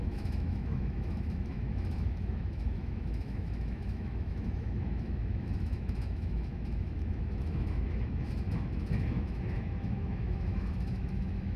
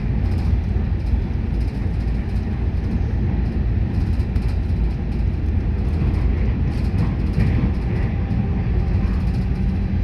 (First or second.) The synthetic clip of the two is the first